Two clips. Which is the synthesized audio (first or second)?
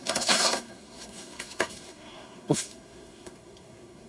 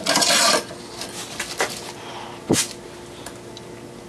first